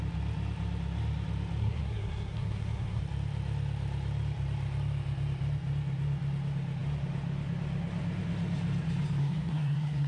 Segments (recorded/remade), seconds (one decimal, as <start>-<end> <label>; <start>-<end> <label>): 0.0-1.6 recorded; 1.6-3.0 remade; 3.0-9.2 recorded; 9.2-10.1 remade